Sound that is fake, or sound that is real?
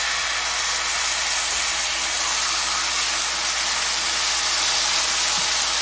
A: real